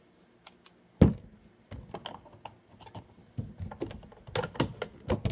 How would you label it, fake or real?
real